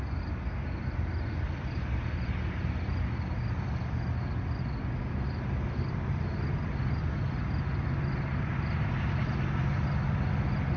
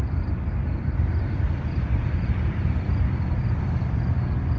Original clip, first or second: first